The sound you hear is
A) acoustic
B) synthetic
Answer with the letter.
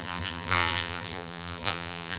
B